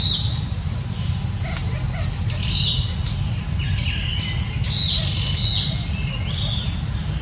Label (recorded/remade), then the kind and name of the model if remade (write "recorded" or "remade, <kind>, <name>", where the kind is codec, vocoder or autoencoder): recorded